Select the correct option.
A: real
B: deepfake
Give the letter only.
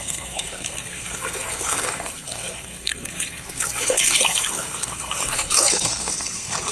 B